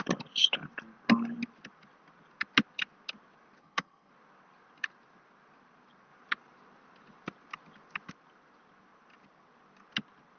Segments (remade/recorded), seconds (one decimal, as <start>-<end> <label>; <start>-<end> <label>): 0.0-3.6 recorded; 3.6-4.1 remade; 4.1-10.4 recorded